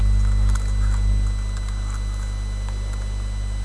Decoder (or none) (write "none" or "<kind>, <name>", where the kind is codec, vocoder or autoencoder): none